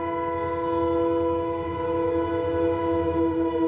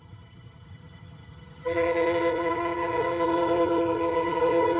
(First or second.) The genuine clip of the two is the first